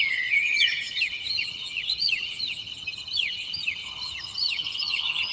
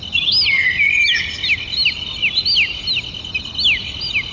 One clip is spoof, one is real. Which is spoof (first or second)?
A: first